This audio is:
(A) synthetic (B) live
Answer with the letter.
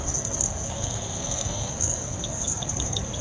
A